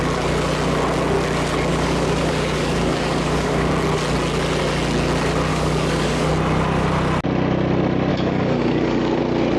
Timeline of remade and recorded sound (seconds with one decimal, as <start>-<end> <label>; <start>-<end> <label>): 0.0-1.7 recorded; 1.7-3.7 remade; 3.7-5.5 recorded; 5.5-6.3 remade; 6.3-8.1 recorded; 8.1-9.2 remade; 9.2-9.6 recorded